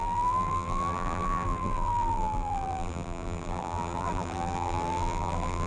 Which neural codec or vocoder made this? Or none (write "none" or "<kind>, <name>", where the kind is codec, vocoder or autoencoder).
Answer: vocoder, BigVGAN v2